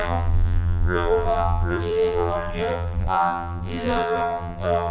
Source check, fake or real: fake